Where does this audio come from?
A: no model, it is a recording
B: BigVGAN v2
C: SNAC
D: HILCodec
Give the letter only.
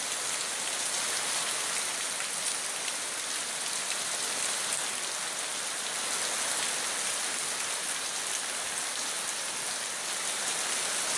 A